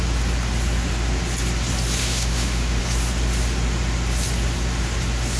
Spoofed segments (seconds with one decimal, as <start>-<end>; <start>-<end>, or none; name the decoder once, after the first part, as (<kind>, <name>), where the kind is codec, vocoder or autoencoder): 2.0-2.8 (autoencoder, DAC-VAE)